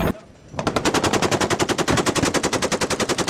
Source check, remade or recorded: recorded